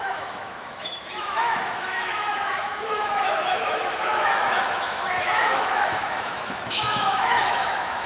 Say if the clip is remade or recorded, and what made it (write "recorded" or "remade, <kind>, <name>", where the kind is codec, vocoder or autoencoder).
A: remade, autoencoder, DAC-VAE